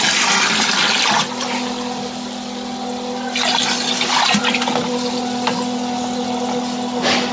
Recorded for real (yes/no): yes